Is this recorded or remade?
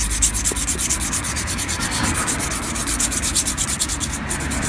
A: recorded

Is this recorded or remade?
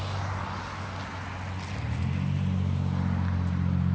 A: recorded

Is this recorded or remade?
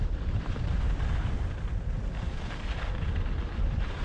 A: recorded